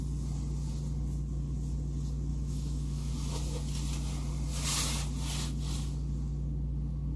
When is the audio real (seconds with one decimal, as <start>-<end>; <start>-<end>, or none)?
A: 0.0-2.3; 3.1-7.2